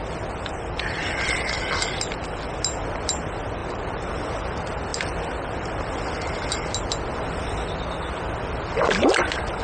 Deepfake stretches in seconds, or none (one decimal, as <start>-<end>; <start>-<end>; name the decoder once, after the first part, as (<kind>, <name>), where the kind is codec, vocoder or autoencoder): 3.6-4.2 (vocoder, BigVGAN v2)